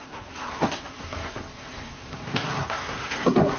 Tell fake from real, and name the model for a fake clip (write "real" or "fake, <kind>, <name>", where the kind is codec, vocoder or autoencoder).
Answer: fake, codec, SNAC